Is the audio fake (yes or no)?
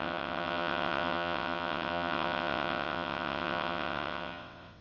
yes